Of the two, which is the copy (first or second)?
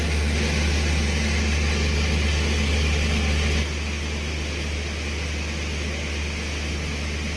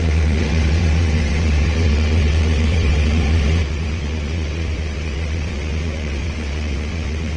second